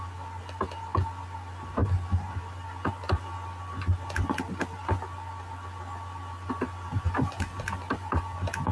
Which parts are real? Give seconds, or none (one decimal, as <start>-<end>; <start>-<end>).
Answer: 0.0-8.7